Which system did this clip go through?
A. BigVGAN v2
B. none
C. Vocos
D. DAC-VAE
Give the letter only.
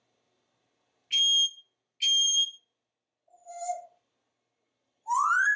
B